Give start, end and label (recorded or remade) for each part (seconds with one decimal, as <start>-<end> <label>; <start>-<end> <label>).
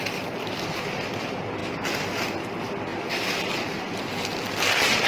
0.0-1.6 remade; 1.6-2.5 recorded; 2.5-5.1 remade